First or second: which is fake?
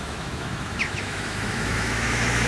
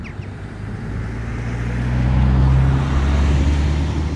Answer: first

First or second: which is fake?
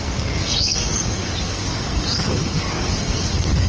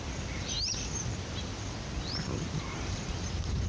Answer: first